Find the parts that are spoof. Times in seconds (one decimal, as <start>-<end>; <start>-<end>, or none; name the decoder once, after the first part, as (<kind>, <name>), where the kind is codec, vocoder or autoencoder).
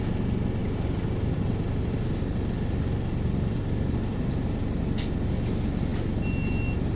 0.6-4.8 (vocoder, BigVGAN v2)